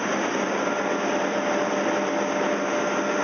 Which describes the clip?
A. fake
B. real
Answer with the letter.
B